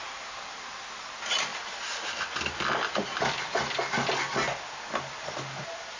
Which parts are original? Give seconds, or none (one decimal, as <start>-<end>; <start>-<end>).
0.0-6.0